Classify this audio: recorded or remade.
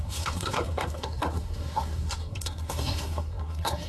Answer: remade